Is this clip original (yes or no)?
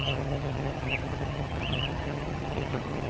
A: no